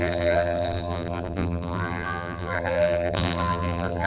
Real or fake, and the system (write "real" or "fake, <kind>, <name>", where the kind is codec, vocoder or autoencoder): fake, vocoder, BigVGAN v2